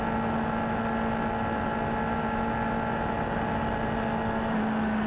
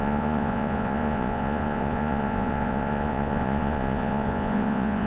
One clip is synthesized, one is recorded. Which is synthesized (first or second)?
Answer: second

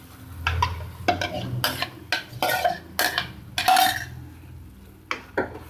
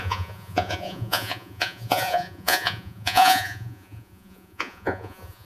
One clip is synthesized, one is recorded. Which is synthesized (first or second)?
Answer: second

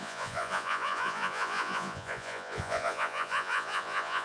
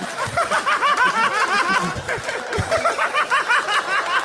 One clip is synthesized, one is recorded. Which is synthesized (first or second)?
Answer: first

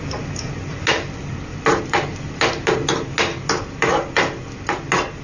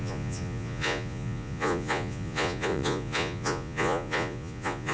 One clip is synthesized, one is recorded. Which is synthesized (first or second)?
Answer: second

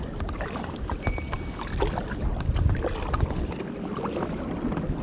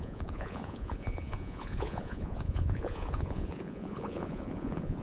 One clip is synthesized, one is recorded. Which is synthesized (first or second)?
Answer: second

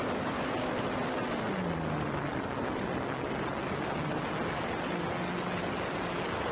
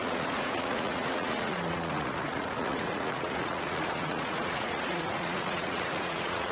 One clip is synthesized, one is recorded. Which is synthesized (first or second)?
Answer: second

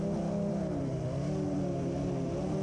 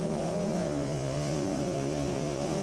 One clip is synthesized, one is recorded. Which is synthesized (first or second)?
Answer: second